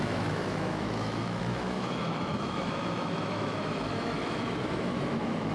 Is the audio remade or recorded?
remade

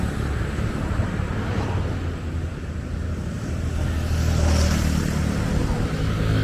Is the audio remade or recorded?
recorded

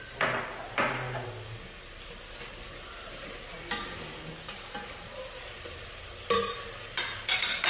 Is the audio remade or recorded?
recorded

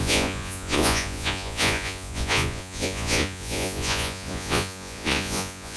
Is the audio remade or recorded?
remade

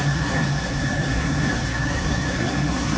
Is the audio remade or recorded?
remade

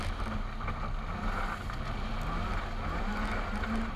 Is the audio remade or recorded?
recorded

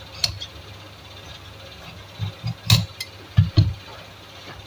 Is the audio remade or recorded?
recorded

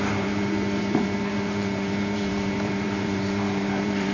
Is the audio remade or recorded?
remade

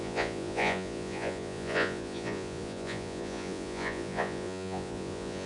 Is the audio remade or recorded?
remade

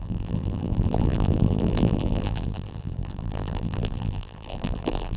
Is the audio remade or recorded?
remade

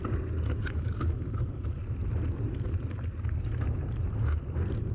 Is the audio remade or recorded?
recorded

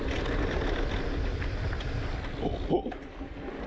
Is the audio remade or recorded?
recorded